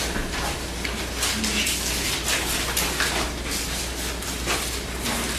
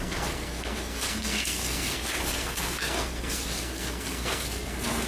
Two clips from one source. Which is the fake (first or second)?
second